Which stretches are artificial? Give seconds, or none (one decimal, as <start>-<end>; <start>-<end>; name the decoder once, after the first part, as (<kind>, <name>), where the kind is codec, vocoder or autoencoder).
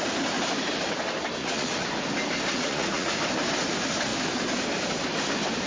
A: 1.4-1.9 (vocoder, Vocos); 2.5-3.1